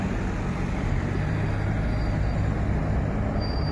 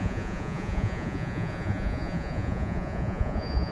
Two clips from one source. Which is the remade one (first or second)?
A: second